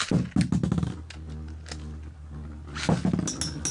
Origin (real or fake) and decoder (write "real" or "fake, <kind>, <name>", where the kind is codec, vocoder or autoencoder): real